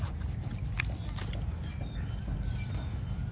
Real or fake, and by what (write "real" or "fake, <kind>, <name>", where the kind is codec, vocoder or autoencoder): real